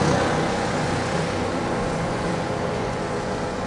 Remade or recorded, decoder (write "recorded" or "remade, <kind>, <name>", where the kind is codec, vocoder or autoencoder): remade, vocoder, Vocos